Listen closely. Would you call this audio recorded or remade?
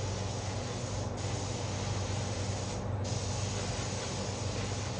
recorded